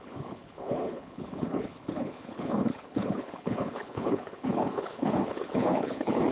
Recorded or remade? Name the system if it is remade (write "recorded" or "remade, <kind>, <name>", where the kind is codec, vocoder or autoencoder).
remade, codec, HILCodec